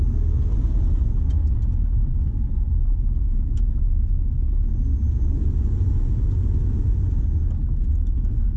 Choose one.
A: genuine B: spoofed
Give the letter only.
A